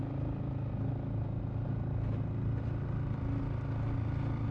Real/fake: real